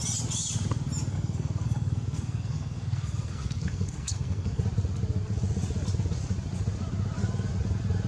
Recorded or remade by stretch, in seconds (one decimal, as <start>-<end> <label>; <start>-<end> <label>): 0.0-1.1 recorded; 1.1-4.6 remade; 4.6-8.1 recorded